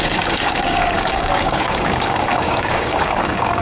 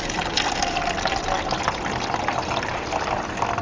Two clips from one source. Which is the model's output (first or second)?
first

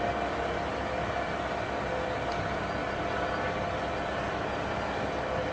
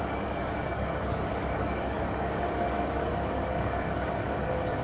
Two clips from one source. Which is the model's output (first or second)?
second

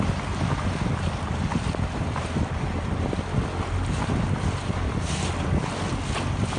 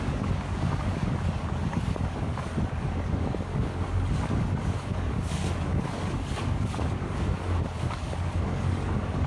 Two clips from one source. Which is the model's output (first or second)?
second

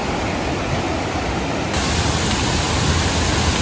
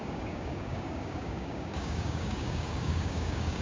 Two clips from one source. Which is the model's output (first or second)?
second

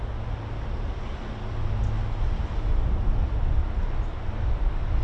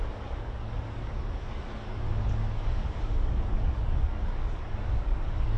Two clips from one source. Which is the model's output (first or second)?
second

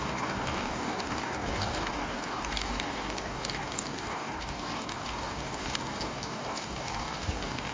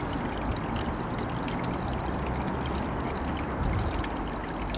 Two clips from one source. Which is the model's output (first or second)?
first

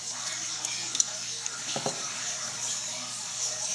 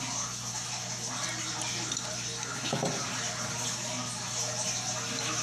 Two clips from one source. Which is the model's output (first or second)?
first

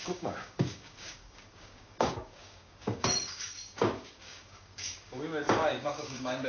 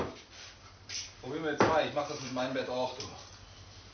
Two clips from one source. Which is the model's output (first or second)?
first